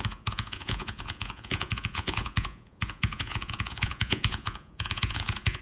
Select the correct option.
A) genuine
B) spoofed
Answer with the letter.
B